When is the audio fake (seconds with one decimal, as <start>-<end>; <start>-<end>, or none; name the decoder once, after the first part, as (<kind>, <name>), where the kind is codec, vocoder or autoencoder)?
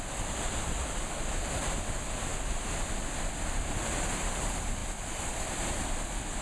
none